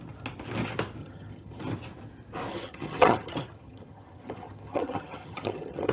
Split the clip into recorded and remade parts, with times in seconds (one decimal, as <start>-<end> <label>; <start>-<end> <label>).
0.0-1.0 recorded; 1.0-1.6 remade; 1.6-2.5 recorded; 2.5-5.9 remade